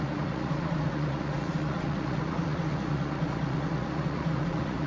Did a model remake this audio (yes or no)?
yes